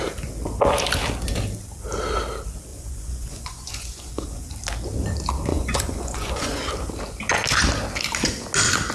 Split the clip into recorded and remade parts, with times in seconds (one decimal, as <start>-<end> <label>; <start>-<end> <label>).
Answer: 0.0-2.7 recorded; 2.7-4.5 remade; 4.5-5.5 recorded; 5.5-6.6 remade; 6.6-8.9 recorded